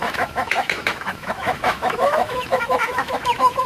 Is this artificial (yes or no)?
yes